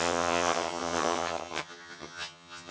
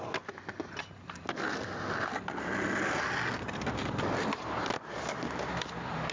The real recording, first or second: second